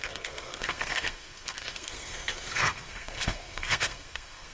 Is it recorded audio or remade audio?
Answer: remade